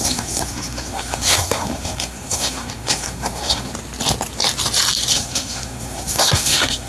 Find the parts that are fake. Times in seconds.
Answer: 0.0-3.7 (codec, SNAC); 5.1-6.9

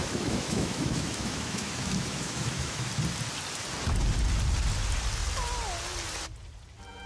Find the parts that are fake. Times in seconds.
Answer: 0.0-2.9 (autoencoder, DAC-VAE)

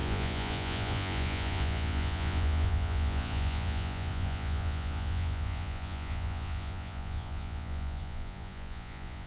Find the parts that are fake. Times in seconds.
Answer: 0.0-9.3 (vocoder, Vocos)

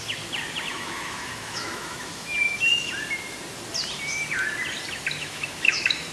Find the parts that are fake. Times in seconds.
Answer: 0.7-2.9 (autoencoder, DAC-VAE); 5.2-6.1